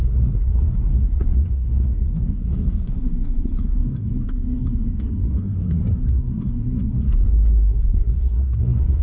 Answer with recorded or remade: remade